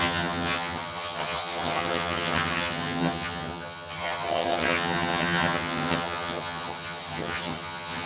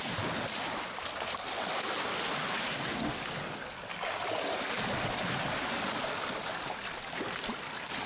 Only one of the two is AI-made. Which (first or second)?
first